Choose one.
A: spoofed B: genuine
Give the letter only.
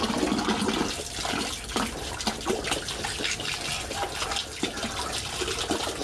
B